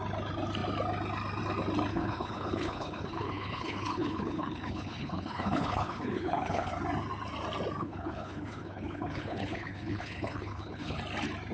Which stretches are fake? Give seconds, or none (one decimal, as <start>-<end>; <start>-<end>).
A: 1.9-6.7; 7.8-11.0